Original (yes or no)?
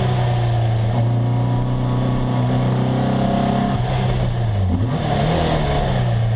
yes